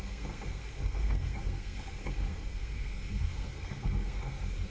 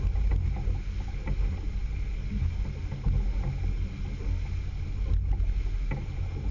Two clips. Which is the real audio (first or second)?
second